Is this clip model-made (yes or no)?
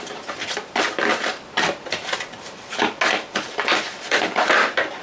no